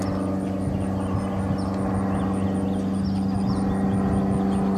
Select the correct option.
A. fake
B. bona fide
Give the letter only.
B